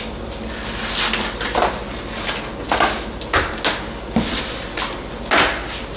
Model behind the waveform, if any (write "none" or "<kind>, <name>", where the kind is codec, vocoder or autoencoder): none